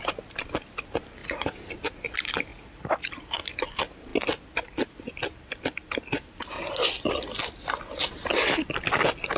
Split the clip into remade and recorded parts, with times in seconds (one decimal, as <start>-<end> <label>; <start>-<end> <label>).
0.0-1.2 recorded; 1.2-1.7 remade; 1.7-2.5 recorded; 2.5-3.1 remade; 3.1-9.4 recorded